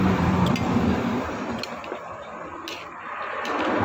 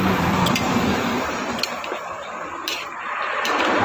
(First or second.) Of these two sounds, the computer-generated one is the second